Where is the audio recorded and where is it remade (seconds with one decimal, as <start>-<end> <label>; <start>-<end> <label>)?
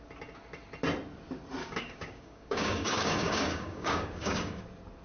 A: 0.0-1.6 recorded; 1.6-4.6 remade; 4.6-5.0 recorded